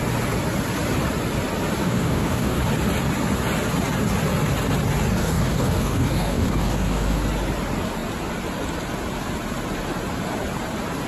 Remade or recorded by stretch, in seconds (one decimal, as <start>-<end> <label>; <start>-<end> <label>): 0.0-1.8 recorded; 1.8-2.6 remade; 2.6-5.2 recorded; 5.2-7.2 remade; 7.2-11.1 recorded